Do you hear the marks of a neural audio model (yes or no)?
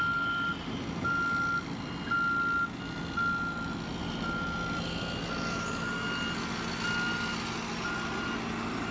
no